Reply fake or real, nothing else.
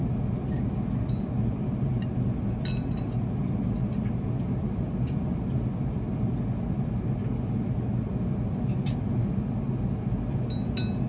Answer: real